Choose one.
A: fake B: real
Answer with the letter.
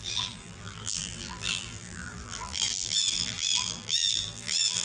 A